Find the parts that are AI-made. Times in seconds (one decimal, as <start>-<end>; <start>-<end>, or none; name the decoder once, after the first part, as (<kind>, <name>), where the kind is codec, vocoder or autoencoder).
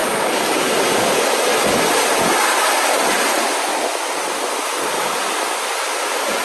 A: 0.0-0.7 (codec, DAC)